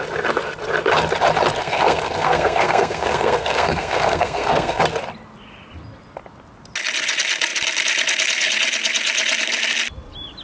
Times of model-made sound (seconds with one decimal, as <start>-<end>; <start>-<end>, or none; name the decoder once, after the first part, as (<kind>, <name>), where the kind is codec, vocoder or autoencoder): 1.6-4.8 (codec, SNAC)